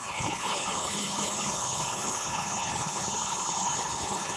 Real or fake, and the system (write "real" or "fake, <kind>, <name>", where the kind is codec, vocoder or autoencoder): fake, codec, HILCodec